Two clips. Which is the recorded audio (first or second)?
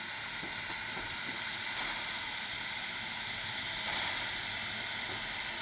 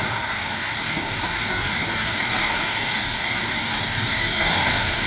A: first